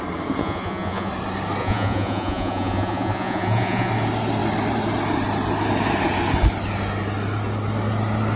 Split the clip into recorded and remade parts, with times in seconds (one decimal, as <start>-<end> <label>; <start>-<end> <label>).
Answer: 0.0-0.4 recorded; 0.4-1.1 remade; 1.1-1.6 recorded; 1.6-3.9 remade; 3.9-8.4 recorded